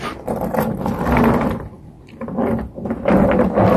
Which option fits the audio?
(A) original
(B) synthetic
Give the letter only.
A